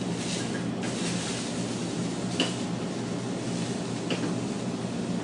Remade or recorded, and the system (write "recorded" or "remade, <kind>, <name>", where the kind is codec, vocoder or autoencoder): recorded